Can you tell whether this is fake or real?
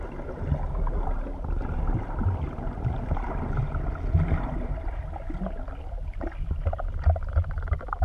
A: real